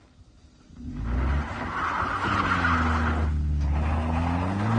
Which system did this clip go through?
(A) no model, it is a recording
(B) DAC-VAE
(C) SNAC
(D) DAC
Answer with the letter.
A